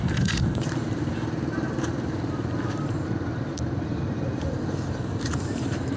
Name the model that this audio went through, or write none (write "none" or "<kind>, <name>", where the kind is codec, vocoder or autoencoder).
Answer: vocoder, BigVGAN v2